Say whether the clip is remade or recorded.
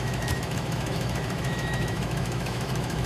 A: remade